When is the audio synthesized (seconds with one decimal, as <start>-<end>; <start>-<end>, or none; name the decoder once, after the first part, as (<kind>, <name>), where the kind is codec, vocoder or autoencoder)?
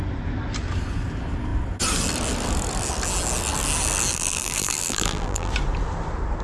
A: 4.1-5.5 (vocoder, BigVGAN v2)